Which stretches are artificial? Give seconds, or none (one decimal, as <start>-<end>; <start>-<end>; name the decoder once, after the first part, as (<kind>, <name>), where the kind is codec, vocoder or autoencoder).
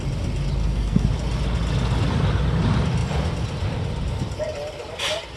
0.6-1.1 (codec, SNAC)